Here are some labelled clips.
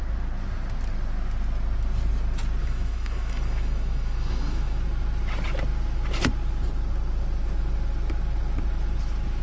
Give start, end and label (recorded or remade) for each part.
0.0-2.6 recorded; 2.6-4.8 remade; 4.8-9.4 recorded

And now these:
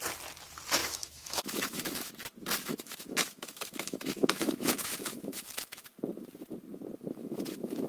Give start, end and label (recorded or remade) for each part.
0.0-0.8 recorded; 0.8-2.1 remade; 2.1-2.7 recorded; 2.7-5.9 remade; 5.9-7.2 recorded; 7.2-7.9 remade